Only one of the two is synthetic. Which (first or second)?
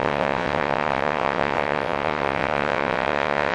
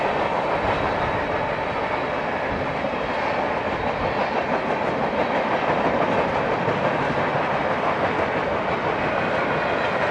first